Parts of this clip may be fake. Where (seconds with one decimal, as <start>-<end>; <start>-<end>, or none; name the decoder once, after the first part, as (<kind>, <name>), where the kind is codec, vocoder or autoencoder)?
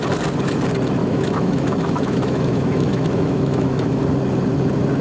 1.0-4.0 (autoencoder, DAC-VAE)